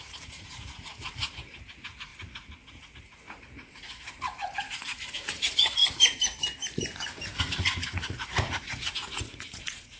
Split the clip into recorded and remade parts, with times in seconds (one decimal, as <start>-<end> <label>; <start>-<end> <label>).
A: 0.0-5.8 remade; 5.8-7.4 recorded; 7.4-10.0 remade